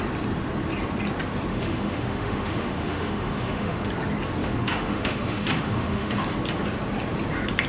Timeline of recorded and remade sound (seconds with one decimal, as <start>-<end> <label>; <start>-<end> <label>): 0.0-1.5 recorded; 1.5-3.9 remade; 3.9-4.4 recorded; 4.4-6.1 remade; 6.1-7.7 recorded

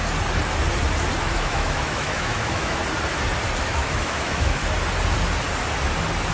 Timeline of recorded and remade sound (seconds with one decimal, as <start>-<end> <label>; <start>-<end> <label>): 0.0-1.2 recorded; 1.2-2.8 remade; 2.8-3.6 recorded; 3.6-4.6 remade; 4.6-6.3 recorded